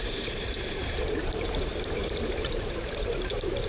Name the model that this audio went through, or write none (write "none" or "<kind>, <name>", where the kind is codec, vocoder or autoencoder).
vocoder, BigVGAN v2